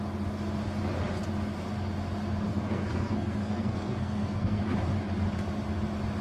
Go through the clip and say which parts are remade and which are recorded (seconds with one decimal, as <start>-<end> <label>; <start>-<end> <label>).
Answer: 0.0-2.5 recorded; 2.5-4.6 remade; 4.6-6.2 recorded